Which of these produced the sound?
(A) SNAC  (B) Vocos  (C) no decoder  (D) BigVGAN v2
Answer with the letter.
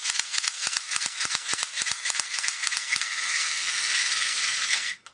A